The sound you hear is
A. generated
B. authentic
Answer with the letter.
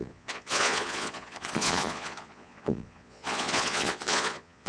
A